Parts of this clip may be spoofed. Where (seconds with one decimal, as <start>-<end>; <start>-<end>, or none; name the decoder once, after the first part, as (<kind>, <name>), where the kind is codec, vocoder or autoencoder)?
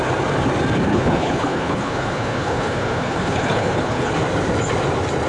0.9-4.1 (codec, HILCodec)